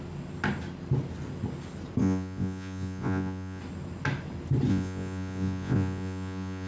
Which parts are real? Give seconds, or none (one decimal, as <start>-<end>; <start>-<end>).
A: 0.0-2.0; 3.6-4.7